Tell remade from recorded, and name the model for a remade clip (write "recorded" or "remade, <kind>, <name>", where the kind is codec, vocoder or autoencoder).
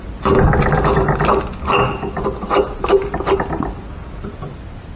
recorded